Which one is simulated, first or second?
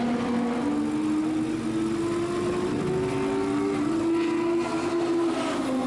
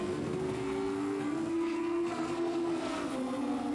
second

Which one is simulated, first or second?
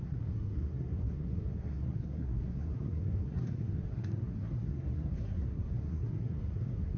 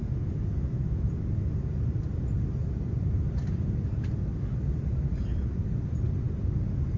first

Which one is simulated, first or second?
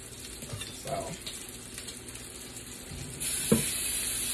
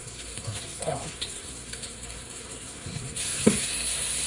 second